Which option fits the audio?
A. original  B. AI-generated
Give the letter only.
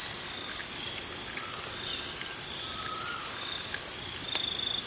A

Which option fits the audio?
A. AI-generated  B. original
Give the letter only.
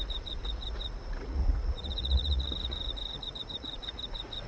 A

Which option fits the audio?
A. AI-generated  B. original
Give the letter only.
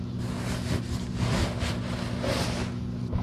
B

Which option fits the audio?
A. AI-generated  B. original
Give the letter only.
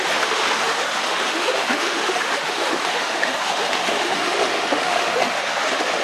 A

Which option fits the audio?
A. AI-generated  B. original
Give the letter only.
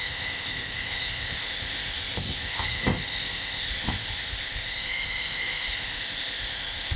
A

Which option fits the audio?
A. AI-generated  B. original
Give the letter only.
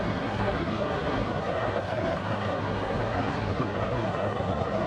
A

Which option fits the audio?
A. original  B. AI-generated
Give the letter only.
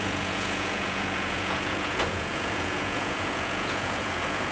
B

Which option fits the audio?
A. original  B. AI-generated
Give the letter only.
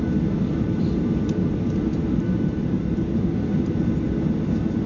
A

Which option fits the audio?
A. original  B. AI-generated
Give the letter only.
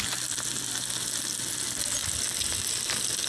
A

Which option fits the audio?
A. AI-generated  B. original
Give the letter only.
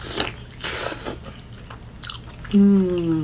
B